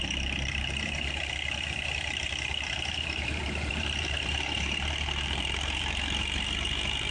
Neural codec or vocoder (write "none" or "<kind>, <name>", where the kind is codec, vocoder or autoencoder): vocoder, BigVGAN v2